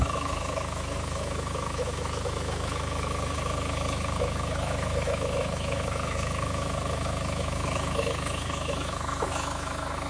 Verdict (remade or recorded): remade